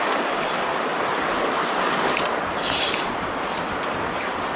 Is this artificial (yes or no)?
yes